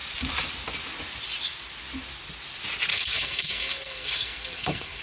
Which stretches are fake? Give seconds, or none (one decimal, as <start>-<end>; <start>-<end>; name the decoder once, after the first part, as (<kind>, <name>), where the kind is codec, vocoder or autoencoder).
2.9-5.0 (codec, SNAC)